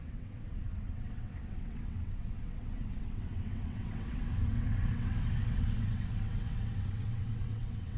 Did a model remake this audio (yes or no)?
yes